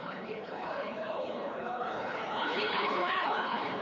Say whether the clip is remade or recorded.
remade